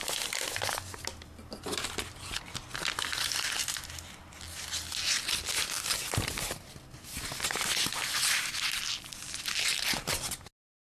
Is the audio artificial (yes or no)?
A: no